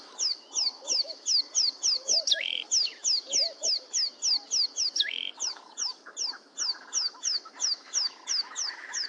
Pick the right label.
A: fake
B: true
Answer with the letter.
A